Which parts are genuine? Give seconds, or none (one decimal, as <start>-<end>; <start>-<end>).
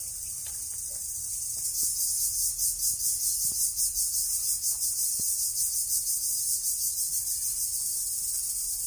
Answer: 0.0-8.9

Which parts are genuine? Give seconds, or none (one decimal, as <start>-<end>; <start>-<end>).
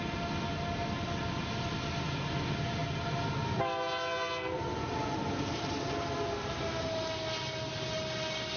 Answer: 0.0-8.6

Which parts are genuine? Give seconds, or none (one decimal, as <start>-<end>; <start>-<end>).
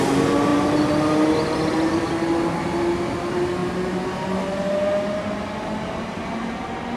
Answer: 0.0-7.0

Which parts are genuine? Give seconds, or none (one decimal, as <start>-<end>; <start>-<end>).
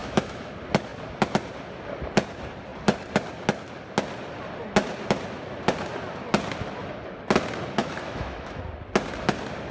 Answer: 0.5-7.8; 8.6-9.7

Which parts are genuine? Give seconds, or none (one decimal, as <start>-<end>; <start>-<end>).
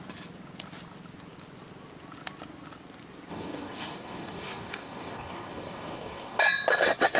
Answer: 0.0-3.3; 6.4-7.2